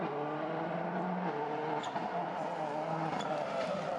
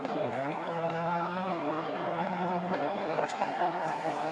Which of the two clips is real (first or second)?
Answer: first